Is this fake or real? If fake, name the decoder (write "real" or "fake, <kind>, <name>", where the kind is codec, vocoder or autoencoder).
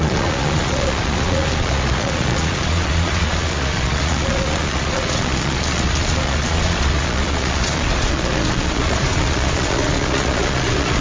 fake, vocoder, Vocos